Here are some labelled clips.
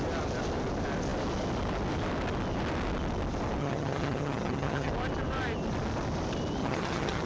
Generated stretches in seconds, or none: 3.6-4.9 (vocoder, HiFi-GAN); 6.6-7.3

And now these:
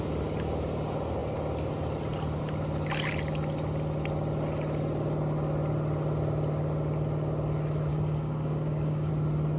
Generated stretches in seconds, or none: 7.9-9.1 (codec, DAC)

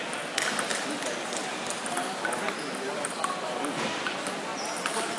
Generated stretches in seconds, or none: 0.7-3.8 (vocoder, BigVGAN v2)

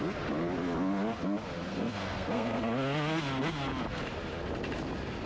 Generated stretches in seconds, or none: 1.7-2.6 (codec, SNAC)